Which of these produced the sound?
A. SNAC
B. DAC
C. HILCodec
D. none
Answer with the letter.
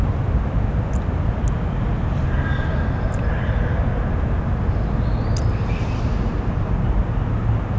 D